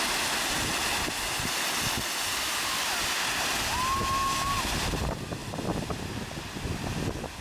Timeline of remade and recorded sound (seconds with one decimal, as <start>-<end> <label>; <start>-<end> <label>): 0.0-4.0 recorded; 4.0-4.5 remade; 4.5-7.4 recorded